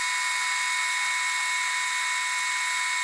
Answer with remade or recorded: recorded